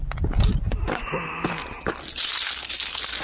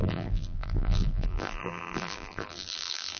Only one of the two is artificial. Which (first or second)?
second